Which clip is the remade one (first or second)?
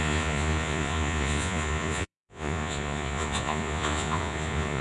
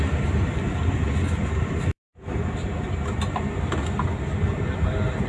first